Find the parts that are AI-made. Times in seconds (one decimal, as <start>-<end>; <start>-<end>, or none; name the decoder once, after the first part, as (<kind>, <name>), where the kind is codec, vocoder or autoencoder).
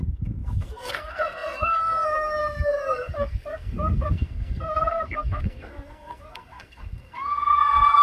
0.0-8.0 (codec, SNAC)